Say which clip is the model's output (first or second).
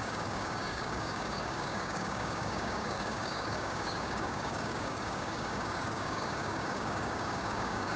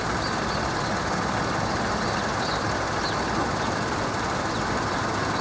first